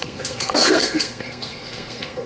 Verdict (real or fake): fake